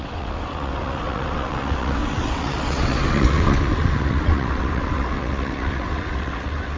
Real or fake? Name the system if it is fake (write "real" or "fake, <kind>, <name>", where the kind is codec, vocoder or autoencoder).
fake, vocoder, WaveNeXt